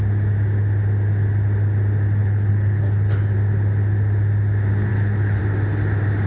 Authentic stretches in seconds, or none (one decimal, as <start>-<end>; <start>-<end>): 0.0-2.2; 3.2-4.9; 5.4-6.3